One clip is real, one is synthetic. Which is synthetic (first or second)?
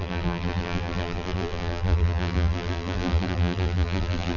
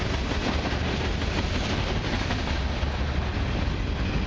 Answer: first